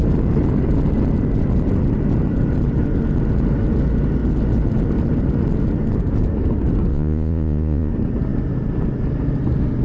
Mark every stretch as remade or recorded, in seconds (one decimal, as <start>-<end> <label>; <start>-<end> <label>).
0.0-6.9 recorded; 6.9-7.9 remade; 7.9-9.8 recorded